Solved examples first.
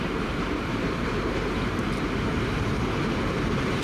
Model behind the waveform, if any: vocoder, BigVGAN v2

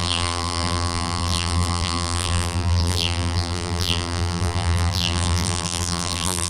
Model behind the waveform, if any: vocoder, BigVGAN v2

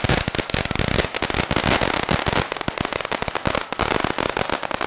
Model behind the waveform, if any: none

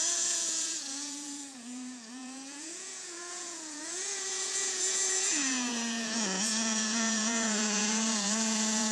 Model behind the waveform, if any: vocoder, Vocos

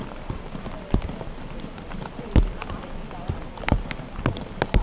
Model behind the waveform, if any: none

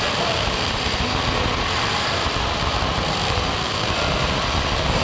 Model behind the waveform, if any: vocoder, BigVGAN v2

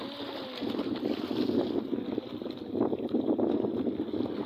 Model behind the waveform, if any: none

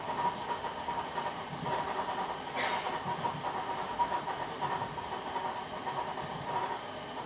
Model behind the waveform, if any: none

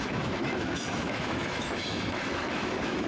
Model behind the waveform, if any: autoencoder, DAC-VAE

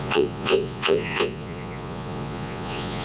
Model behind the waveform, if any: vocoder, Vocos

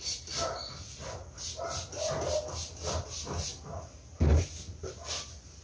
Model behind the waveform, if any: none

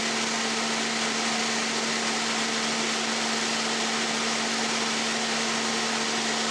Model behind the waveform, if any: none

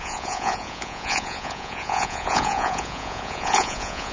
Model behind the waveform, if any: vocoder, Vocos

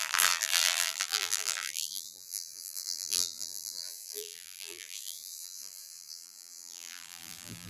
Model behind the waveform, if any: vocoder, BigVGAN v2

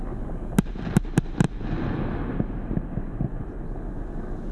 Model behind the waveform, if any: none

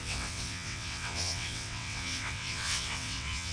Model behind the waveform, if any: vocoder, WaveNeXt